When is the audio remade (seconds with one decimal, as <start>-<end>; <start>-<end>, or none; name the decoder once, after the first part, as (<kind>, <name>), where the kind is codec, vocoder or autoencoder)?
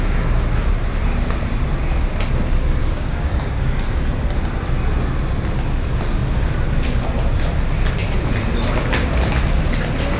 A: 2.8-4.0 (codec, DAC)